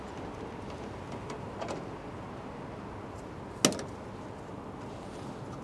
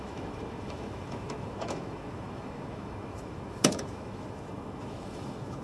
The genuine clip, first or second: first